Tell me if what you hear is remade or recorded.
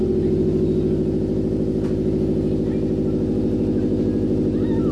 recorded